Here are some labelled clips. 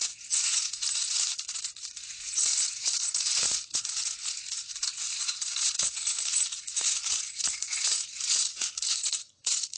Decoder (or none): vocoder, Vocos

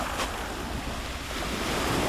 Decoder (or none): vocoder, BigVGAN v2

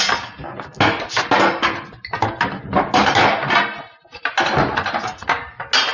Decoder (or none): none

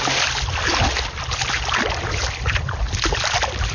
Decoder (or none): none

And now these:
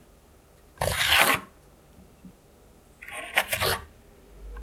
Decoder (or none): none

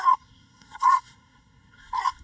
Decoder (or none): codec, SNAC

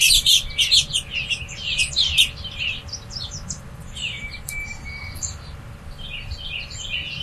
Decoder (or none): vocoder, BigVGAN v2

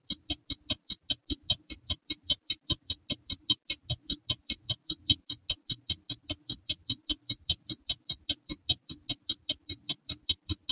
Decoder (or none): none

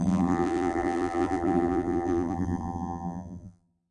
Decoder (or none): vocoder, BigVGAN v2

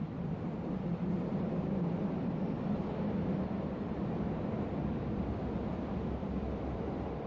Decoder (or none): vocoder, BigVGAN v2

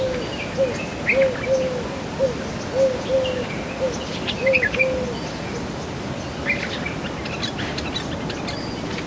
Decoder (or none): none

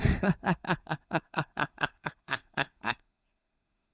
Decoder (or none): codec, SNAC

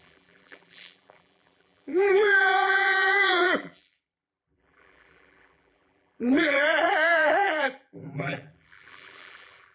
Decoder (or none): vocoder, BigVGAN v2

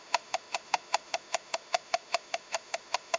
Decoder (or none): autoencoder, DAC-VAE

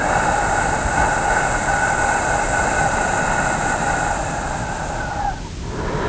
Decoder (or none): none